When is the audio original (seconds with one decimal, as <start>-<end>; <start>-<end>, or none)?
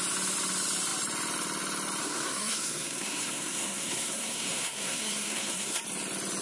0.0-2.0; 5.8-6.4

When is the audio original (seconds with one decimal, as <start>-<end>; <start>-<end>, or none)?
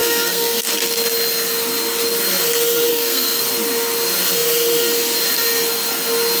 0.7-2.9; 3.4-6.4